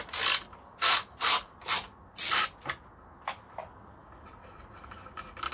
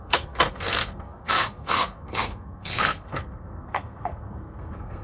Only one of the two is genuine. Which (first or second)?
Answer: first